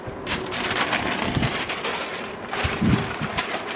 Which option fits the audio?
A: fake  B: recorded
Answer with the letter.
B